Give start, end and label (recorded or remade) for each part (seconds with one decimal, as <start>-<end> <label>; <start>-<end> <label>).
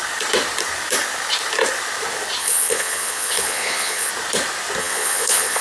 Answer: 0.0-2.4 recorded; 2.4-4.1 remade; 4.1-4.8 recorded; 4.8-5.6 remade